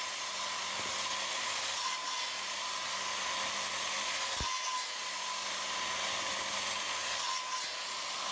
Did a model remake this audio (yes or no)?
no